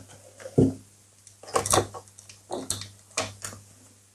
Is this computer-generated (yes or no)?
no